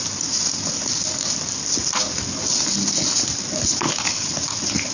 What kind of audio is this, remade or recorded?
recorded